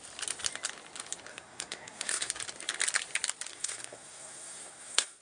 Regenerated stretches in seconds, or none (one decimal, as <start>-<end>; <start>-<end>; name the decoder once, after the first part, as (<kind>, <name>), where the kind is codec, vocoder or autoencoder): 1.3-2.3 (codec, SNAC); 3.5-5.2